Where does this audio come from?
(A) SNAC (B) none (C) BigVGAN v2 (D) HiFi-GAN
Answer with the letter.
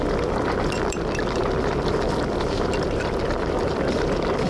C